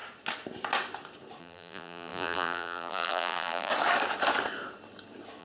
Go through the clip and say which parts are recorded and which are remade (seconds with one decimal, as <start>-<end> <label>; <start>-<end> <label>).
0.0-1.4 recorded; 1.4-3.7 remade; 3.7-5.4 recorded